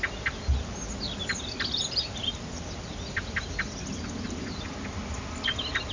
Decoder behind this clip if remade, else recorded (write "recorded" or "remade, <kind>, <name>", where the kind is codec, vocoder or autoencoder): recorded